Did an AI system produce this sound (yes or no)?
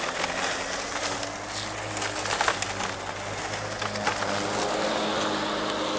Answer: no